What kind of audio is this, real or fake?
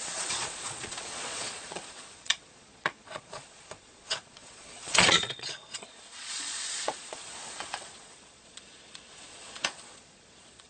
fake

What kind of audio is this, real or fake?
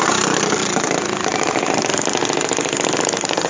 real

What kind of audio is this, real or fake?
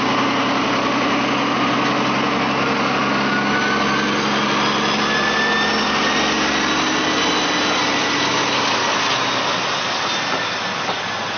real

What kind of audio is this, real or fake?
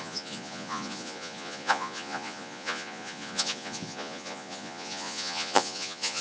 fake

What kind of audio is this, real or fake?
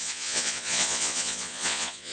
fake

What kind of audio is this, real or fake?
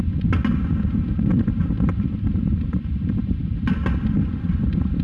real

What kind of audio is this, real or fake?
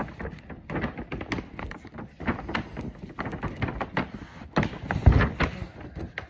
real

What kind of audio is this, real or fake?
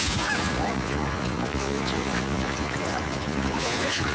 fake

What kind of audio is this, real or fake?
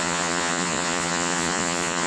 fake